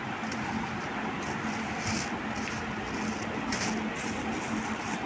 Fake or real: real